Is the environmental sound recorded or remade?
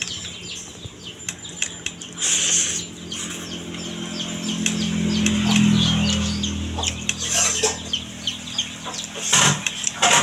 recorded